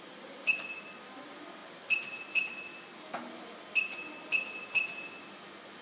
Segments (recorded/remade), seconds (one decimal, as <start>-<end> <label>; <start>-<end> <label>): 0.0-5.8 recorded